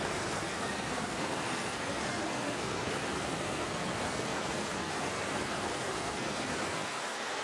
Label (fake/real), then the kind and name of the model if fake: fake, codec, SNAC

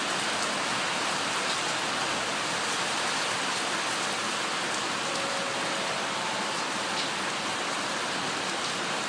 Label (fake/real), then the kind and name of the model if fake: real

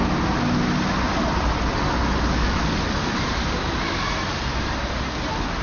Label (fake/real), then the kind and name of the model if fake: real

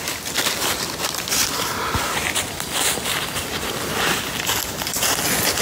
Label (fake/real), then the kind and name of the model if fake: real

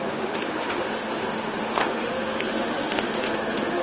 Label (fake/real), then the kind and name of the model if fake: fake, autoencoder, DAC-VAE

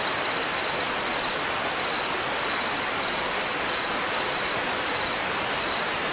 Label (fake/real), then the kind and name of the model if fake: real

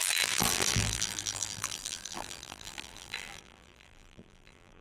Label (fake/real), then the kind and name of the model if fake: fake, vocoder, BigVGAN v2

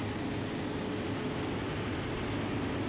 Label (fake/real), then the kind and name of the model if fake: real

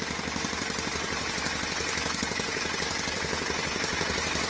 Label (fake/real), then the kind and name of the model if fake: real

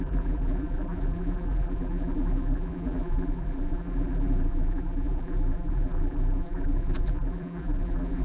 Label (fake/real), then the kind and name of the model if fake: fake, vocoder, BigVGAN v2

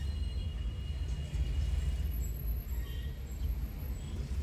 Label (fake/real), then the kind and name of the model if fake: real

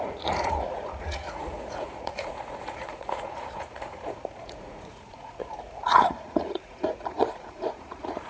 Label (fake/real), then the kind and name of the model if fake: fake, vocoder, Vocos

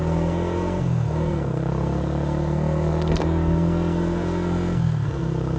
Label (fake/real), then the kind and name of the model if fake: fake, codec, SNAC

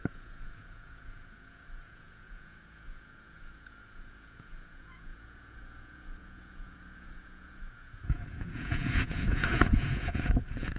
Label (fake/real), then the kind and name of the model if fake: fake, vocoder, Vocos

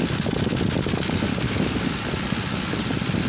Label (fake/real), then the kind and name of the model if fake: real